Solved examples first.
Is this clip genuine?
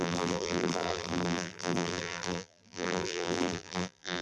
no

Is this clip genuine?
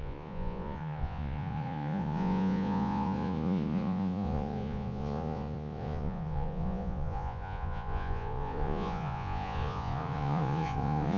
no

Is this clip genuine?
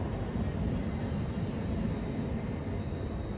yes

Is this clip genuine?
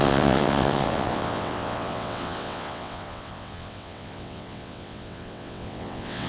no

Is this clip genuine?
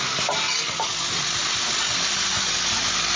yes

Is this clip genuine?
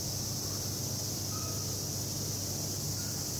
yes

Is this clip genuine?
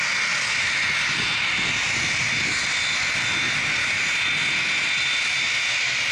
yes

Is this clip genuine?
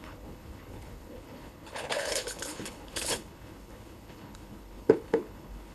no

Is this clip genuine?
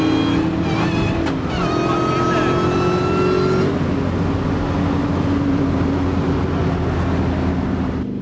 yes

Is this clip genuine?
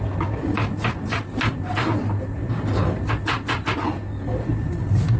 yes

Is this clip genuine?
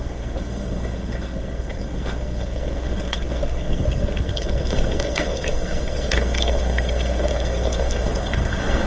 no